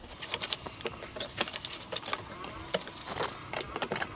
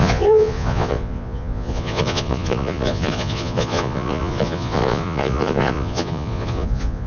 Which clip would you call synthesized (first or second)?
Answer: second